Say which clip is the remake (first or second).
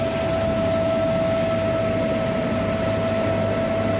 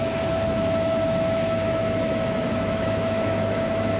second